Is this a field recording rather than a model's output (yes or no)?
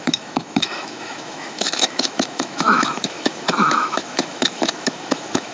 no